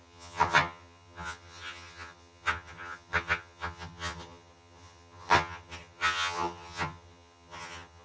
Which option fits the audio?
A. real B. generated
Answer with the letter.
B